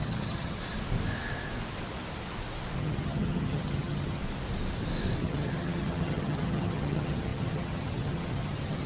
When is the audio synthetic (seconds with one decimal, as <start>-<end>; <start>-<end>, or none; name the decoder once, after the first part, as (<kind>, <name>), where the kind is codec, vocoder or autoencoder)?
0.0-0.6 (vocoder, HiFi-GAN); 2.8-4.2; 5.2-8.9